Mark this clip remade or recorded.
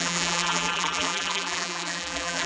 remade